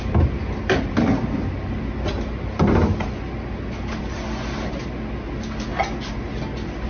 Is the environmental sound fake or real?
real